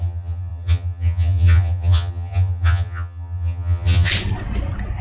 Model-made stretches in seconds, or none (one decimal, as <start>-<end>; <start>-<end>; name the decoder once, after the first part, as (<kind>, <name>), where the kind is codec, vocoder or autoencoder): 0.0-4.1 (vocoder, HiFi-GAN)